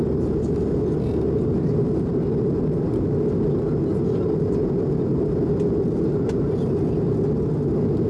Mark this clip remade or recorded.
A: recorded